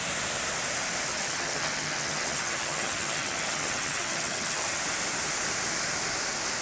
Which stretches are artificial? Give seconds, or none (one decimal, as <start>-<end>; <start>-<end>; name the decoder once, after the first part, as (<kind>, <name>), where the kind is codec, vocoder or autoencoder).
1.1-4.8 (vocoder, HiFi-GAN)